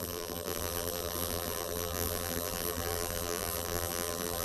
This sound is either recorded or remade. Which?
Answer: remade